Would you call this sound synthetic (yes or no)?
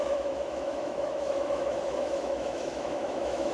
yes